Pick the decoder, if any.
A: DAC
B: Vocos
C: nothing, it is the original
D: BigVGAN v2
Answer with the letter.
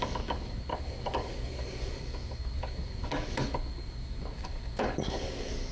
A